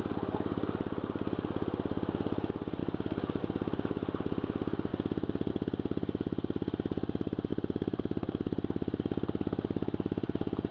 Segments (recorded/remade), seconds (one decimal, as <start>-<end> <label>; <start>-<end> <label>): 0.0-2.8 recorded; 2.8-3.4 remade; 3.4-4.9 recorded; 4.9-5.5 remade; 5.5-7.5 recorded; 7.5-10.7 remade